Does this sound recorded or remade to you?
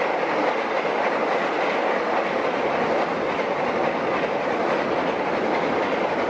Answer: recorded